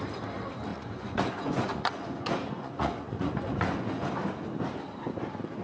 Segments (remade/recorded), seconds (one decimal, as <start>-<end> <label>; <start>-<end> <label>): 0.0-0.7 recorded; 0.7-4.1 remade; 4.1-5.6 recorded